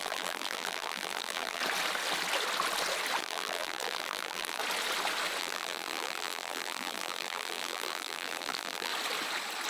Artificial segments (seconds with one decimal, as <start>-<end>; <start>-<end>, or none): 0.0-1.6; 3.2-4.6; 5.4-8.9